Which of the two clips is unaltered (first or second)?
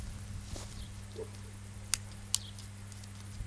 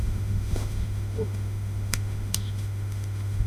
first